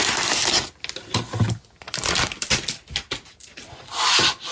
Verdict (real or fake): real